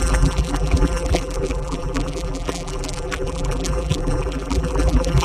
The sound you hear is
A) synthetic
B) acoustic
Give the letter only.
A